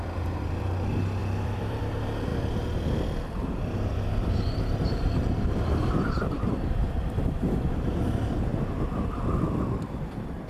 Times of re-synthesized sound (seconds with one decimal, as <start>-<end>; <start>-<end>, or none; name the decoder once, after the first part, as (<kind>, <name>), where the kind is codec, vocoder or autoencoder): 0.0-8.5 (vocoder, BigVGAN v2); 9.1-10.5